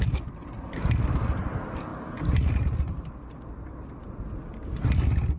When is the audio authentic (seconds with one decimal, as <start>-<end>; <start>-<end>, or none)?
0.0-5.4